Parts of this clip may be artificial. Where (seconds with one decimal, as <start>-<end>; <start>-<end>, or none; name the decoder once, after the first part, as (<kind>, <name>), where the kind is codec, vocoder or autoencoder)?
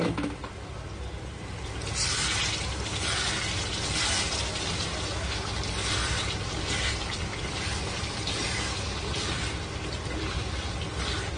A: 7.3-8.7 (vocoder, BigVGAN v2)